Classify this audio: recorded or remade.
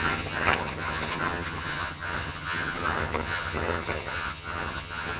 remade